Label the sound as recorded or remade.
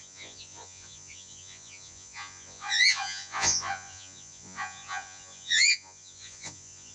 remade